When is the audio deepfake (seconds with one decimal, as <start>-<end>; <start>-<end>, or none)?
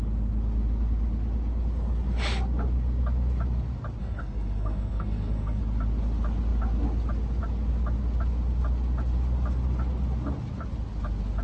4.0-5.6